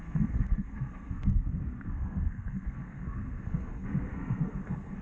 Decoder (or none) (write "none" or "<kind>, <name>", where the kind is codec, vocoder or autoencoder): codec, SNAC